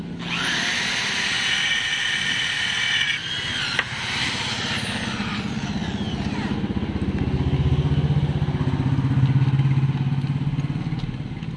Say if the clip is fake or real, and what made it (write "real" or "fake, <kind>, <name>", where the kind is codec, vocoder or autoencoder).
real